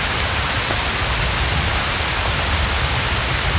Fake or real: real